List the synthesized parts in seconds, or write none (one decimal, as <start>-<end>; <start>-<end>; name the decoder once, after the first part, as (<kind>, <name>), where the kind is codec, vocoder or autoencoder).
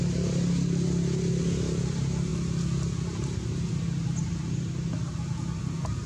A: none